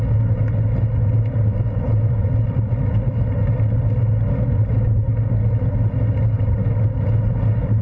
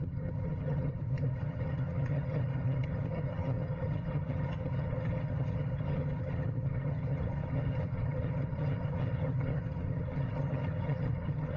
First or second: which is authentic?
first